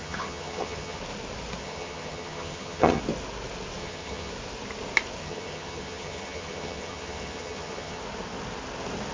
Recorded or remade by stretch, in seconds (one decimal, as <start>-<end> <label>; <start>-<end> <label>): 0.0-1.0 remade; 1.0-1.6 recorded; 1.6-3.0 remade; 3.0-3.8 recorded; 3.8-4.3 remade; 4.3-5.2 recorded; 5.2-8.0 remade; 8.0-9.1 recorded